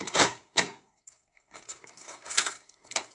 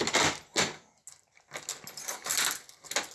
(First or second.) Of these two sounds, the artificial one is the first